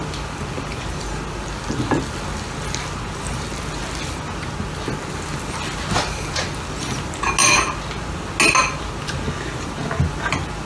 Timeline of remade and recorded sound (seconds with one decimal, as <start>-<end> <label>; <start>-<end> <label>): 0.0-10.7 recorded